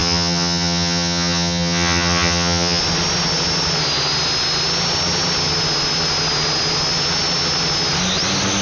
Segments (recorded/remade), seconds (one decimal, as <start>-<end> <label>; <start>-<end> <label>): 0.0-2.8 remade; 2.8-8.6 recorded